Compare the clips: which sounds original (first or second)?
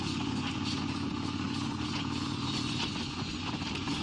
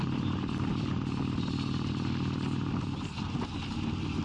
second